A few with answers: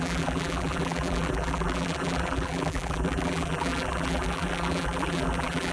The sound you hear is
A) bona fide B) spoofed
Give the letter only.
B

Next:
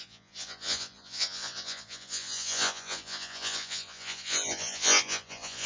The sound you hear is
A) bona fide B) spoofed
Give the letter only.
B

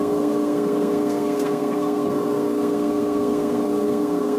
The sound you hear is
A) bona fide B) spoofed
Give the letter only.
B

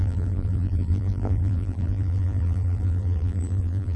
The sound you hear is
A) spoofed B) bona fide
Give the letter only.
A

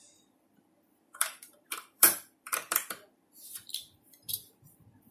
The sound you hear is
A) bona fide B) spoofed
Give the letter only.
B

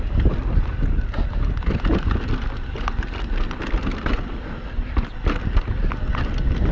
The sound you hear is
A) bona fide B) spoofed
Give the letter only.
A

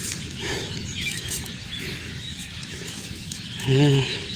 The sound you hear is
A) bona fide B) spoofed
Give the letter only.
B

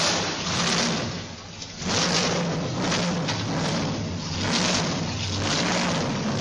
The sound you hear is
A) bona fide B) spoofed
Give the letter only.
A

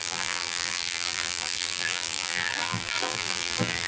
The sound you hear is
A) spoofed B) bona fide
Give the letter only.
A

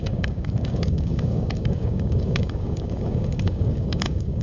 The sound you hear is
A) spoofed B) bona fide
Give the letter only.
A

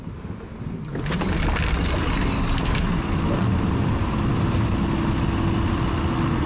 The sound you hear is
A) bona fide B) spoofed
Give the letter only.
A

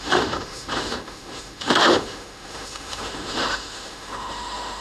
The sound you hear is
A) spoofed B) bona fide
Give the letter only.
A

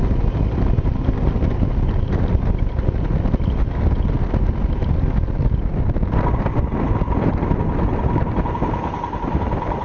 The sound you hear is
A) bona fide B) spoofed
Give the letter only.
A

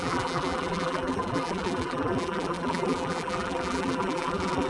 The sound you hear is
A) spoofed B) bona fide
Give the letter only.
A